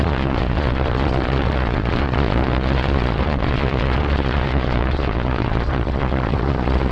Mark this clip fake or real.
fake